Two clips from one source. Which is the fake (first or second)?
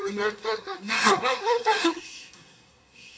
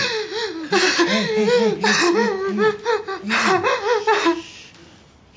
first